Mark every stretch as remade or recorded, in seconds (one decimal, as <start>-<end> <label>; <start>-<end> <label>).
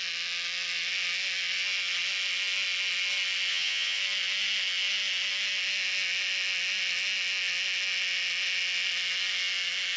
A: 0.0-3.5 recorded; 3.5-4.0 remade; 4.0-10.0 recorded